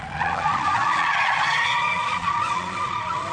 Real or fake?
fake